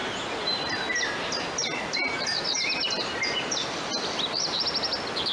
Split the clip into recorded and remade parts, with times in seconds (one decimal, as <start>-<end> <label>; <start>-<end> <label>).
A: 0.0-5.3 recorded